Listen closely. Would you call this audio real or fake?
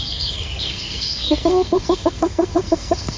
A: fake